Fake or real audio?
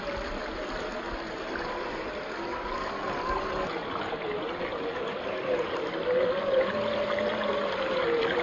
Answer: real